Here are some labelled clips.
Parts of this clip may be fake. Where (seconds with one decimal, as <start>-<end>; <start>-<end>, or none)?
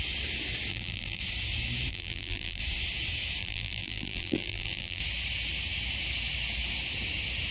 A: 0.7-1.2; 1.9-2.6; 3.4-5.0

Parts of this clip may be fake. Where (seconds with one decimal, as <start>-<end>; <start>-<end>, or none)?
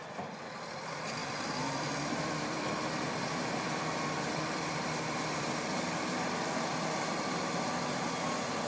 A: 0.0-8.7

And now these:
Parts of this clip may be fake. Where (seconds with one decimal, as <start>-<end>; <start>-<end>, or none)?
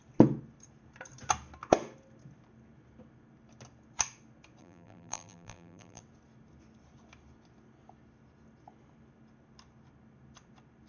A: 4.6-6.0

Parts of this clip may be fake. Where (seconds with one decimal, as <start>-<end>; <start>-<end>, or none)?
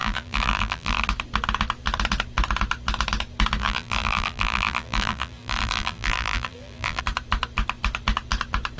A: 0.0-1.0; 3.6-7.0